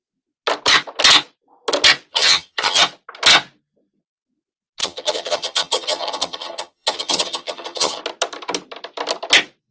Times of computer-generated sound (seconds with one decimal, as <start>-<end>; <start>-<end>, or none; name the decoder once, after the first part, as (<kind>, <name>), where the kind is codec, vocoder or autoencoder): 2.1-2.8 (vocoder, HiFi-GAN); 4.8-8.0

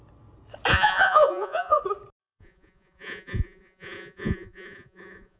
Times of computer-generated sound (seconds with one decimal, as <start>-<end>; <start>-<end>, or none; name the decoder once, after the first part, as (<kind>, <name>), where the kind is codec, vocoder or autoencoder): 0.7-1.8 (vocoder, Vocos); 2.2-5.4

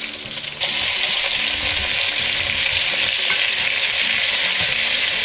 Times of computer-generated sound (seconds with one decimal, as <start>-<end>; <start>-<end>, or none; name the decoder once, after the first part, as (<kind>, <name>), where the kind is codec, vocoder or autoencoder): none

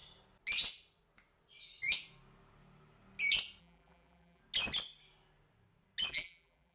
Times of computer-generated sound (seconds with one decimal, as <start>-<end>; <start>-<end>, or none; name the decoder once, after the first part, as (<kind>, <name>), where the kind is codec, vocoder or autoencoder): 3.6-4.4 (vocoder, BigVGAN v2); 6.1-6.7

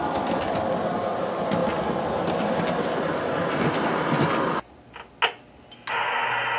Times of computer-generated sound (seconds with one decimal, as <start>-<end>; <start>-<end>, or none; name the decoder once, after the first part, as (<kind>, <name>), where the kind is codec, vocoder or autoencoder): none